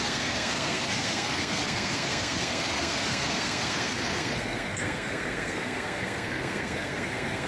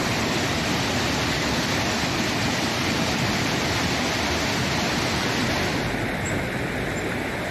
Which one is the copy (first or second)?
first